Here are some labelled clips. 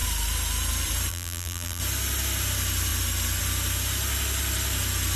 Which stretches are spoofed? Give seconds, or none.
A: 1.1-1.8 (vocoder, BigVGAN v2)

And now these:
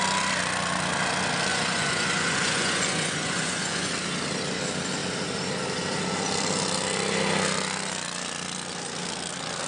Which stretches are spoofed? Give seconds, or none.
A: 1.5-3.9 (vocoder, Vocos)

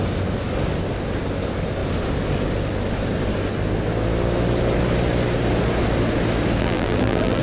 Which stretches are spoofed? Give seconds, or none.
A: 6.6-7.4 (vocoder, BigVGAN v2)